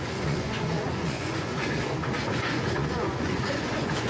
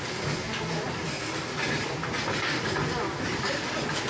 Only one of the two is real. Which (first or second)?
second